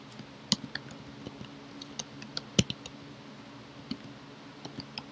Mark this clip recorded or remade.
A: recorded